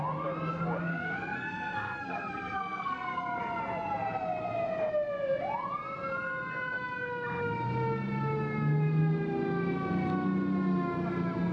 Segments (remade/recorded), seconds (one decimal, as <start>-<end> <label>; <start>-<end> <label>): 0.0-0.9 recorded; 0.9-3.4 remade; 3.4-11.5 recorded